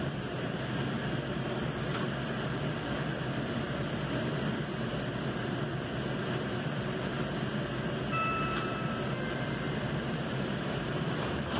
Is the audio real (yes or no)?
no